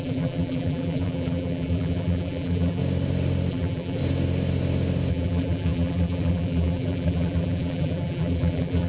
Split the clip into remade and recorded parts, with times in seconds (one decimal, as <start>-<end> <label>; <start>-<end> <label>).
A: 0.0-2.8 remade; 2.8-3.5 recorded; 3.5-4.0 remade; 4.0-5.1 recorded; 5.1-8.9 remade